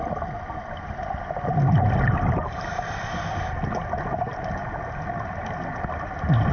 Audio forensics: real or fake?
real